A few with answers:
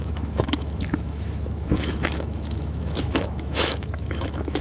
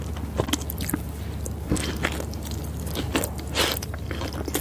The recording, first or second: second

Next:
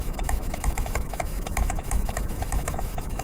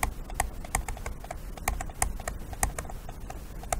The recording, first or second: second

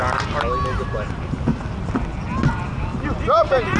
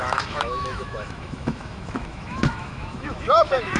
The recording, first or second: first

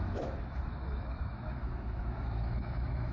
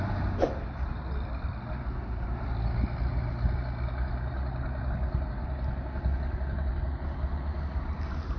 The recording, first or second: second